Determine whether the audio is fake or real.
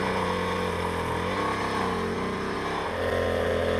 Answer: real